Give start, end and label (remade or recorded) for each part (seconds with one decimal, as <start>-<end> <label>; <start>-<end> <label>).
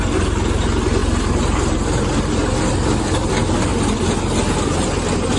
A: 0.0-1.0 recorded; 1.0-3.3 remade; 3.3-3.7 recorded; 3.7-4.2 remade; 4.2-5.4 recorded